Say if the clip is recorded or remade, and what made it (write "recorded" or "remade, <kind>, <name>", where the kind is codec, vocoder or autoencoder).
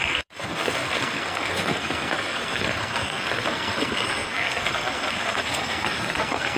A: remade, codec, SNAC